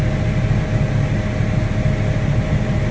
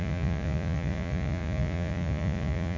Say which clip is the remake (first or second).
second